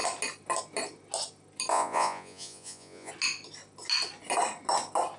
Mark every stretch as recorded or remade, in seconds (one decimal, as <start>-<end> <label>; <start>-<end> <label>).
0.0-1.7 recorded; 1.7-3.1 remade; 3.1-5.2 recorded